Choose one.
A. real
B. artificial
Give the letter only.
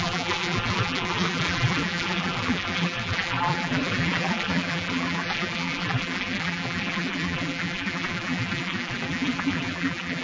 B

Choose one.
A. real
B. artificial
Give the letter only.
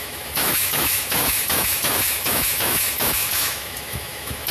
B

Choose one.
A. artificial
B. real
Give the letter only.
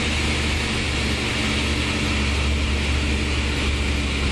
B